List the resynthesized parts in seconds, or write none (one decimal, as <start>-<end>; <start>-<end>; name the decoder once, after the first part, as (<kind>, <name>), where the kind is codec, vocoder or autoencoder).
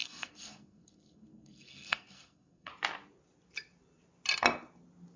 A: 0.0-2.7 (codec, SNAC)